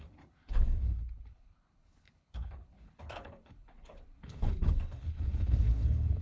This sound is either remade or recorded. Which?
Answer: remade